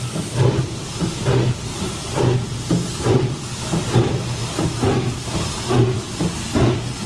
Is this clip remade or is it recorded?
recorded